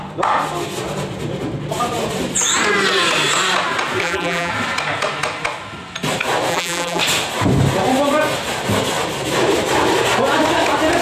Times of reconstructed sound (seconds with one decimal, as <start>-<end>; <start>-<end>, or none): 4.0-4.5; 6.5-7.0